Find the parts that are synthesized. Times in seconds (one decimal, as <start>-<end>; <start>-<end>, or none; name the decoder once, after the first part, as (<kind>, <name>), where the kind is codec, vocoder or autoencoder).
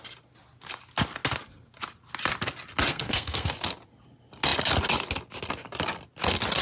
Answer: 2.9-3.5 (codec, SNAC)